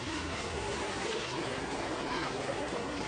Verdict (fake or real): fake